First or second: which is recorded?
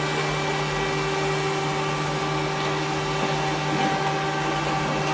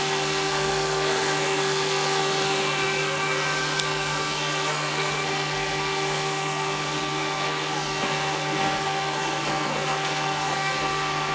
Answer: first